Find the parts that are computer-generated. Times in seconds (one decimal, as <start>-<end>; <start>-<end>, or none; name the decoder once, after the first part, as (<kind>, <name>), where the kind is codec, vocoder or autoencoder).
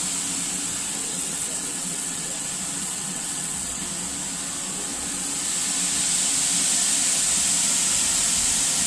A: 1.0-2.4 (vocoder, WaveNeXt); 2.8-3.8